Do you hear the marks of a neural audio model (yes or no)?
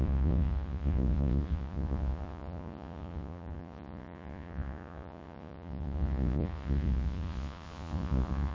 yes